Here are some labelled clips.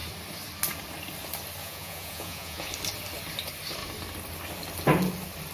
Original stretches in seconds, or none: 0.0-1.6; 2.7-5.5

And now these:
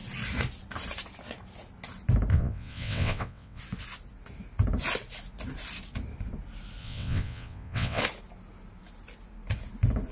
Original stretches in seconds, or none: 0.0-2.3; 3.6-6.8; 8.0-10.1

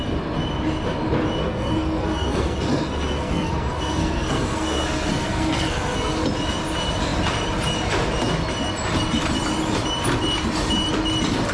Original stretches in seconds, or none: 0.0-1.4; 6.2-11.5

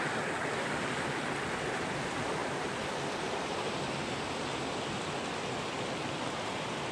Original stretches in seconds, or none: 0.0-6.9

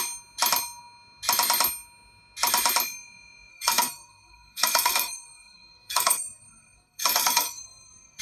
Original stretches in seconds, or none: 0.0-3.5

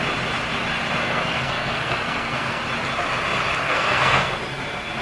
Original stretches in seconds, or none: 0.0-1.0; 2.6-3.6; 4.4-5.0

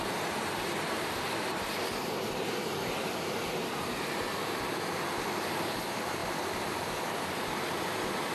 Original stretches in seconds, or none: none